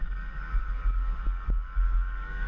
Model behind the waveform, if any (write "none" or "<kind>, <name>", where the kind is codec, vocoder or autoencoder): codec, DAC